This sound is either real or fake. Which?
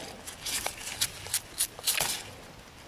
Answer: real